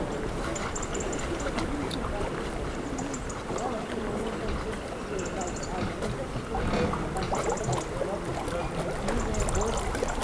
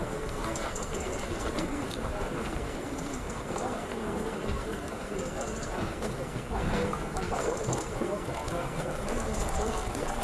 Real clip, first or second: first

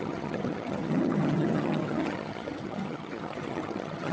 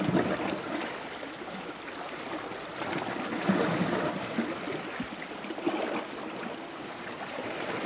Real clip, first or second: second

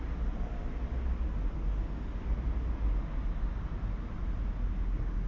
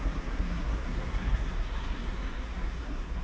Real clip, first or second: first